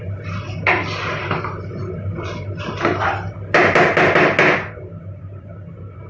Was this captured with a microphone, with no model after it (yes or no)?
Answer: yes